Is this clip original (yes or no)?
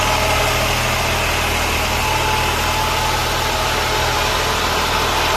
yes